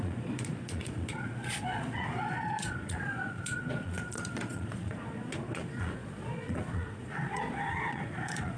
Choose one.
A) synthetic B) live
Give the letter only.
A